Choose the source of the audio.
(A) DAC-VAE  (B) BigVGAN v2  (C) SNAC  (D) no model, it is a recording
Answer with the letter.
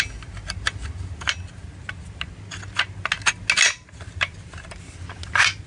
D